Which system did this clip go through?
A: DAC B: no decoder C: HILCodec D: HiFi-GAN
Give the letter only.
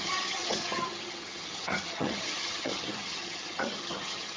D